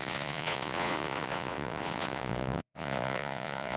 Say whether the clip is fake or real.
fake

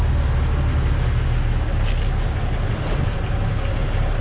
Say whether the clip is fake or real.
real